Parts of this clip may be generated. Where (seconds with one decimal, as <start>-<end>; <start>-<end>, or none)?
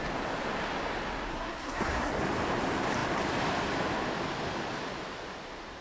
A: 1.3-2.1